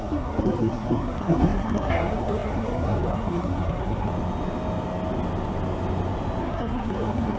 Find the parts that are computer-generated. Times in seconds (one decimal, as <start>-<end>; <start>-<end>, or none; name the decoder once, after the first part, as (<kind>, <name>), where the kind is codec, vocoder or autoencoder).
0.0-4.1 (codec, SNAC); 6.4-7.4